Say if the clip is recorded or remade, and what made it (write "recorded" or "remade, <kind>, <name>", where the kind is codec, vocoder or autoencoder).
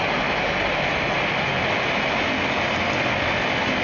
recorded